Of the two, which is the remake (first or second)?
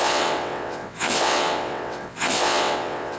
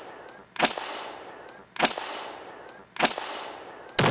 first